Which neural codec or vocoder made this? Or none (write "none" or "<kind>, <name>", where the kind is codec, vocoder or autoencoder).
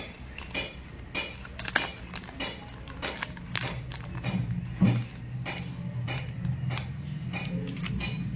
none